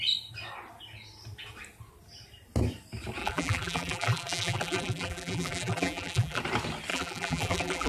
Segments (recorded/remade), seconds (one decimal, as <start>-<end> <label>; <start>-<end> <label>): 0.0-3.2 recorded; 3.2-6.4 remade; 6.4-6.9 recorded; 6.9-7.9 remade